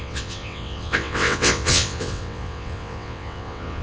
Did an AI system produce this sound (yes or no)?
yes